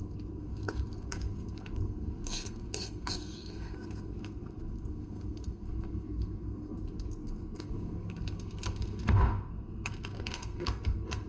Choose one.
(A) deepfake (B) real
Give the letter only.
A